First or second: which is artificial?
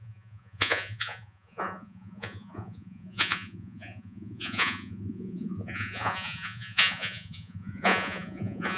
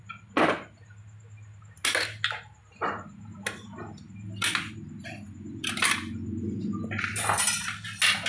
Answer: first